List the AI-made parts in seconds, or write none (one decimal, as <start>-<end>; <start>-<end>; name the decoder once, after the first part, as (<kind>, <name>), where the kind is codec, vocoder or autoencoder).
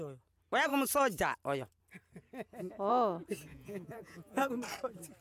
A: 3.5-4.5 (vocoder, Vocos)